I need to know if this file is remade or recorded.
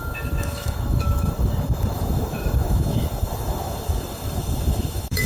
remade